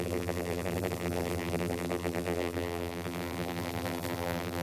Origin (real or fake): fake